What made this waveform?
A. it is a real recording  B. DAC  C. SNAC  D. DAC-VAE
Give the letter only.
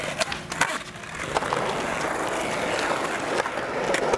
A